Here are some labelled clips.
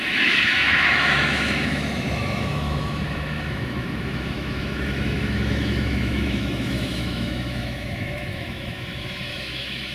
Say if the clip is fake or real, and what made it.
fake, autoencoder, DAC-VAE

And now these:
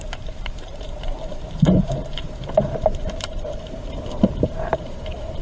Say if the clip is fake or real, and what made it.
fake, vocoder, BigVGAN v2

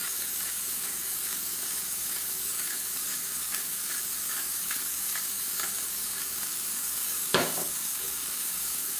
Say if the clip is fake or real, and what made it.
fake, codec, DAC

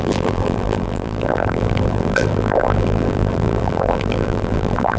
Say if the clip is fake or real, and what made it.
fake, vocoder, BigVGAN v2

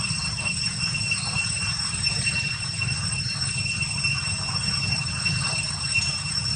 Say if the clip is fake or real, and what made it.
fake, vocoder, BigVGAN v2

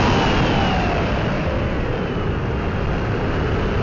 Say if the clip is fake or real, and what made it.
real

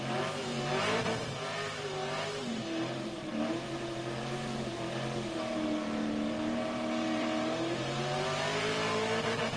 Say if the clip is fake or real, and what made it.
fake, vocoder, BigVGAN v2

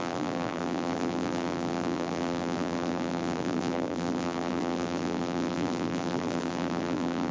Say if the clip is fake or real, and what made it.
fake, vocoder, BigVGAN v2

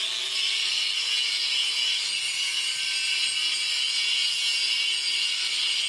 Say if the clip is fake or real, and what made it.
real